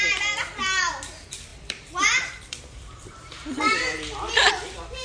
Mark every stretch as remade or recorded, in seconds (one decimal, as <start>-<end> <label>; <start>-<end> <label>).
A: 0.0-5.0 remade